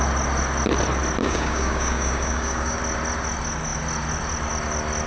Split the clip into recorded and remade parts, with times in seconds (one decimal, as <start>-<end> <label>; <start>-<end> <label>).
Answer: 0.0-1.2 recorded; 1.2-2.8 remade; 2.8-5.1 recorded